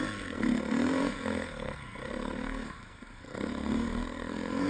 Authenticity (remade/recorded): remade